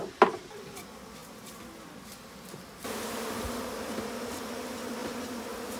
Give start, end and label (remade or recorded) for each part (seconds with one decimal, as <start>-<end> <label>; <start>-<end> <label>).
0.0-5.8 recorded